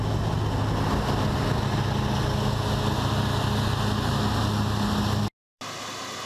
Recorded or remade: recorded